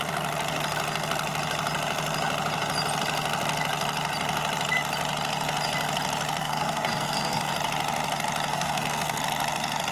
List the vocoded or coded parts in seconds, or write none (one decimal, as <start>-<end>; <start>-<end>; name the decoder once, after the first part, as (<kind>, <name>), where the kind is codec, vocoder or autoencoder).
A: 6.4-7.5 (codec, SNAC); 8.5-9.2